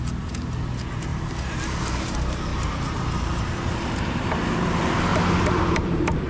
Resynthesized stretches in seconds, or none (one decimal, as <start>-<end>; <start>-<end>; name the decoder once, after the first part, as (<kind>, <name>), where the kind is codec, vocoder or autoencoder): 2.5-4.6 (vocoder, BigVGAN v2); 5.1-6.3